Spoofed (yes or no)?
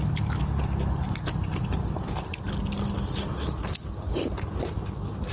no